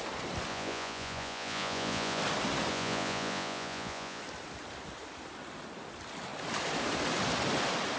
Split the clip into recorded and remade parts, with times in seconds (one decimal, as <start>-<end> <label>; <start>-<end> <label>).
0.0-0.5 recorded; 0.5-2.2 remade; 2.2-2.7 recorded; 2.7-4.2 remade; 4.2-8.0 recorded